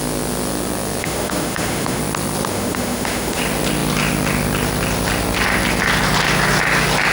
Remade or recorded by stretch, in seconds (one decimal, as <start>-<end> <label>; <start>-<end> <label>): 0.0-1.0 recorded; 1.0-2.0 remade; 2.0-2.5 recorded; 2.5-3.4 remade; 3.4-7.1 recorded